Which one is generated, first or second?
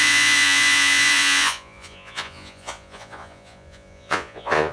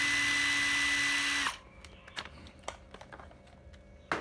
first